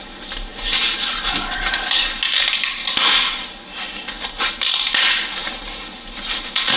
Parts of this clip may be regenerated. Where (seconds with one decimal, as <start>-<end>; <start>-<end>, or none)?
none